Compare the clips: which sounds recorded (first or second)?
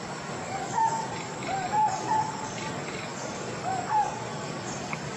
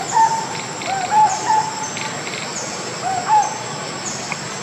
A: second